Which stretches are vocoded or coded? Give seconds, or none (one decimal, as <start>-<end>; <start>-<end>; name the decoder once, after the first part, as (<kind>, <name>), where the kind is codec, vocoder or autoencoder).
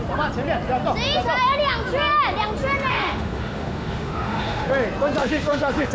2.9-4.7 (autoencoder, DAC-VAE); 5.2-5.9